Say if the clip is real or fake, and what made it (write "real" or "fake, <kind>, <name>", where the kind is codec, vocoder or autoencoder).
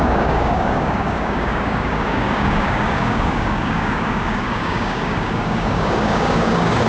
fake, codec, DAC